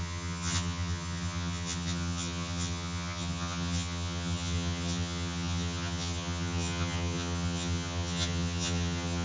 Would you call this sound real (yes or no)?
no